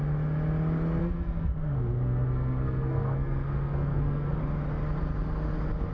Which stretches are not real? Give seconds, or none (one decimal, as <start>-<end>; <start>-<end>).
1.0-4.4